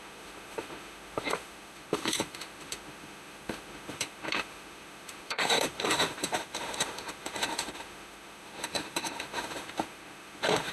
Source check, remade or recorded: remade